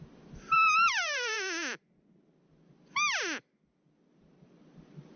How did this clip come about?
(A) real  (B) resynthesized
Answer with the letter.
B